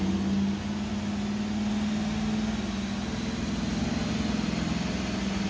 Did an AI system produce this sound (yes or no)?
no